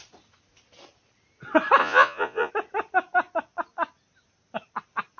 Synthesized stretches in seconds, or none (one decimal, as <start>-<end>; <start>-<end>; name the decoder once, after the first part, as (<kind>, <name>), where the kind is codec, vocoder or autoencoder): 1.8-2.5 (vocoder, Vocos)